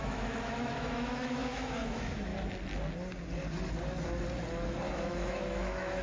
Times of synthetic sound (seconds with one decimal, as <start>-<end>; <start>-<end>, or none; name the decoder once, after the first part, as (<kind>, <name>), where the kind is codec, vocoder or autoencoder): 0.0-2.3 (autoencoder, DAC-VAE); 4.9-6.0